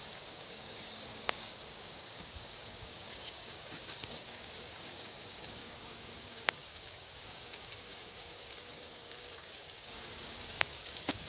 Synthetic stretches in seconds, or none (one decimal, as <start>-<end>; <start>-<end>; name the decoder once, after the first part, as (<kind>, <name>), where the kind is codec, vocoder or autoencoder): 0.0-11.3 (codec, DAC)